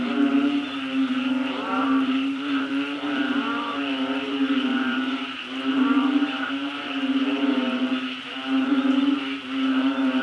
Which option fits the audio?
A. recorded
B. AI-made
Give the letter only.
B